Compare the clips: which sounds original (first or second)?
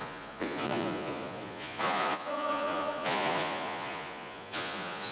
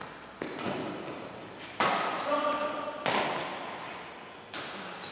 second